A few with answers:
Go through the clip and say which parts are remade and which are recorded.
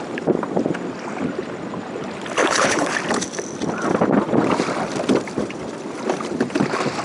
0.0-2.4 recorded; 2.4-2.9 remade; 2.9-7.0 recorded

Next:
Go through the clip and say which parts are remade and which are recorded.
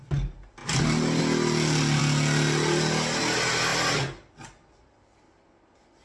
0.0-6.0 recorded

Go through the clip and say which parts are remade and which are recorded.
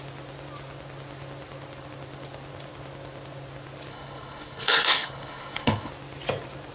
0.0-3.9 recorded; 3.9-5.9 remade; 5.9-6.7 recorded